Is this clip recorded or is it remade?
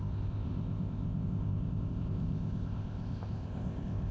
remade